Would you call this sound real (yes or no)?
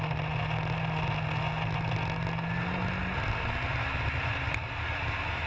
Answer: yes